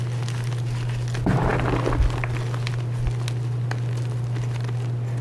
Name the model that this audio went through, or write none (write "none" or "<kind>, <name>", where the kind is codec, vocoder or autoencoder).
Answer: none